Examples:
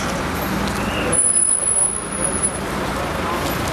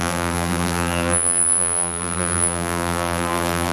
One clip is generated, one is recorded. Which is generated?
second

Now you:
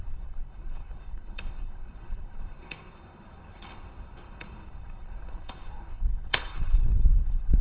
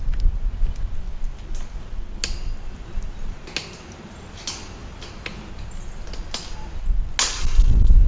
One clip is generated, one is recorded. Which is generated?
first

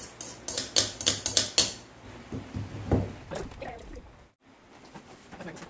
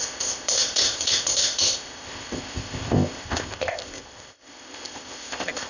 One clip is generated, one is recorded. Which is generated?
second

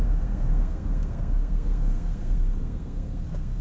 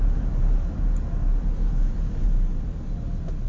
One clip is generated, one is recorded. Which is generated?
first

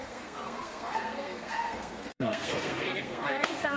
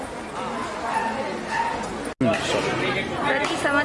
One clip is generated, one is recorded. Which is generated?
first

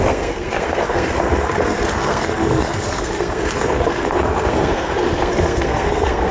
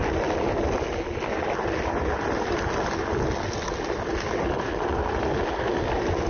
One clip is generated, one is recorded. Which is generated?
first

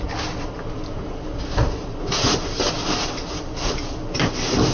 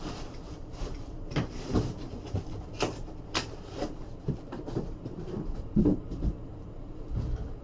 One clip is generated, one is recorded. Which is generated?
second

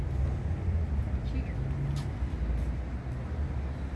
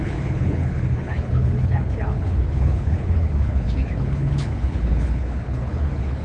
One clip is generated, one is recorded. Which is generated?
second